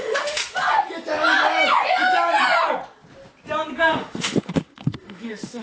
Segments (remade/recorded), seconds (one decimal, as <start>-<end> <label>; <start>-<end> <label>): 0.0-0.4 remade; 0.4-3.8 recorded; 3.8-5.6 remade